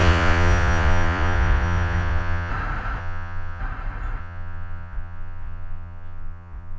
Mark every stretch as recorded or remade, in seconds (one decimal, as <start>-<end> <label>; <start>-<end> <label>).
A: 0.0-2.5 remade; 2.5-3.0 recorded; 3.0-3.6 remade; 3.6-4.2 recorded; 4.2-6.8 remade